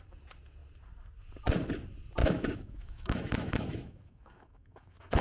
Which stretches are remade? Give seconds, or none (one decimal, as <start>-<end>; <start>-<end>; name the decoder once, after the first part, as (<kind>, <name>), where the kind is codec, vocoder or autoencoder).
2.2-5.2 (autoencoder, DAC-VAE)